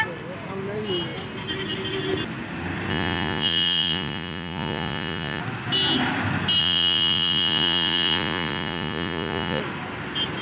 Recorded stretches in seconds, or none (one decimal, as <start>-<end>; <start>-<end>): 0.0-2.9; 5.4-6.6; 9.6-10.4

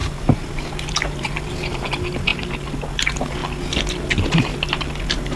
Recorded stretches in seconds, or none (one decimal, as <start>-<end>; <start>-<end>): 0.7-5.4